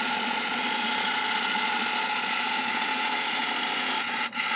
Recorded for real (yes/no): no